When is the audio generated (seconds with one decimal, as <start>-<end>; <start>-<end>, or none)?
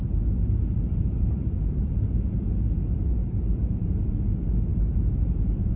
0.9-1.9; 3.2-4.1; 4.7-5.8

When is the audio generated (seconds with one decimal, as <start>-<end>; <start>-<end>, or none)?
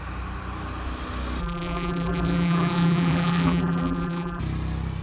1.4-4.4